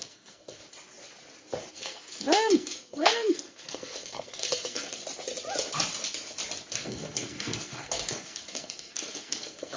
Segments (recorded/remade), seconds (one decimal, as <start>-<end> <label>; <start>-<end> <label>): 0.0-0.6 remade; 0.6-1.7 recorded; 1.7-5.0 remade; 5.0-6.7 recorded; 6.7-9.8 remade